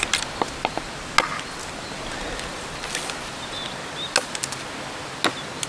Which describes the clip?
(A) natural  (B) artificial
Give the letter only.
A